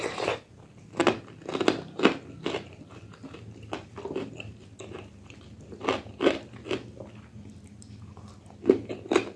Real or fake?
real